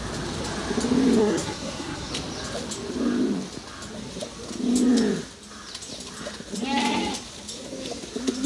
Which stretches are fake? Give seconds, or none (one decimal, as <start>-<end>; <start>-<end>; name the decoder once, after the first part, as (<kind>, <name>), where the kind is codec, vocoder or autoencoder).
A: 1.2-2.1 (codec, SNAC)